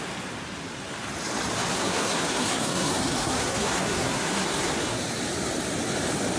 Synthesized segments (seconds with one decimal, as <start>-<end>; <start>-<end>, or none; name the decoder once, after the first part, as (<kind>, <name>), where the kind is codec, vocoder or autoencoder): 1.7-5.0 (codec, SNAC)